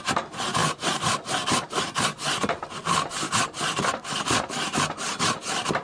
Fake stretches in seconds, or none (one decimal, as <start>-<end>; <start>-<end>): 0.6-2.3